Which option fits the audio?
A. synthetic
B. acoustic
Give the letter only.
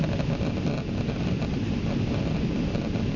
B